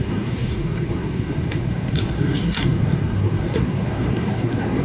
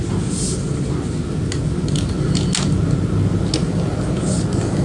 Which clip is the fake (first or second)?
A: first